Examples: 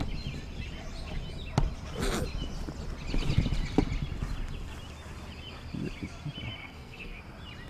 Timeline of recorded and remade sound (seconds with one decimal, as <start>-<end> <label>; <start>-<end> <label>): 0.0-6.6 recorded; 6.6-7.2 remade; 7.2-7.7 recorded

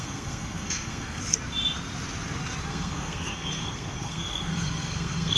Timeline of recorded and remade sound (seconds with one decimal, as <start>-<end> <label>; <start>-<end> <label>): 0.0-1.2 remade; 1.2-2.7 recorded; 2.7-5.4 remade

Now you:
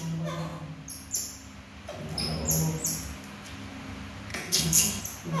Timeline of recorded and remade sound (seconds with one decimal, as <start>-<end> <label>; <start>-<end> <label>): 0.0-4.3 recorded; 4.3-5.0 remade; 5.0-5.4 recorded